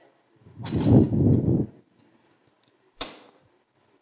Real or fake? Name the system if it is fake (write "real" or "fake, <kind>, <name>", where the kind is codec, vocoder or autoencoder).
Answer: real